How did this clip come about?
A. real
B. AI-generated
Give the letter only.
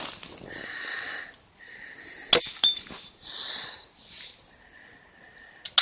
A